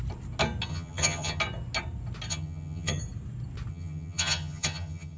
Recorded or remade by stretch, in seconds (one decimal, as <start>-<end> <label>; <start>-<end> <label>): 0.0-0.7 recorded; 0.7-1.4 remade; 1.4-2.3 recorded; 2.3-3.0 remade; 3.0-3.7 recorded; 3.7-5.2 remade